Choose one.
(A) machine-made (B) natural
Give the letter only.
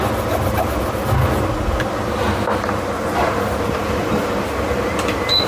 B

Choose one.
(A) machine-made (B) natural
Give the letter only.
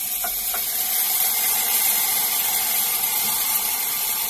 B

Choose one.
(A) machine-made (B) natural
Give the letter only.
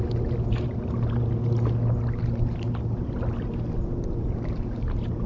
B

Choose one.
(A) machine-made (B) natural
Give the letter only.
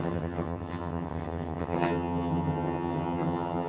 A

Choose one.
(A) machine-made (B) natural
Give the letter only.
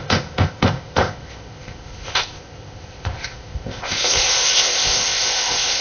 A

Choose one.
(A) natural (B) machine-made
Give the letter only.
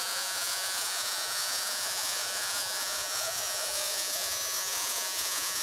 B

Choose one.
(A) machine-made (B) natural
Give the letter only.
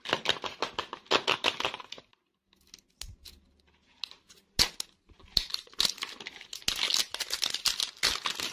B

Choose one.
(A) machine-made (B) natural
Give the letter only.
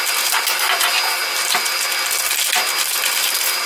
B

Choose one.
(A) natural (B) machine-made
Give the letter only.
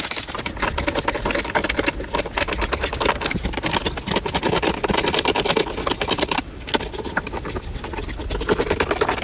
A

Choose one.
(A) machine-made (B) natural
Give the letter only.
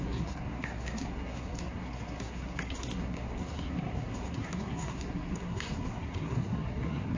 A